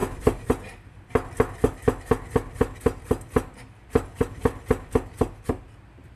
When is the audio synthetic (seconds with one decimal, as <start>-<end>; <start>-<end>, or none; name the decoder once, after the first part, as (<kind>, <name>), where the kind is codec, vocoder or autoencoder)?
none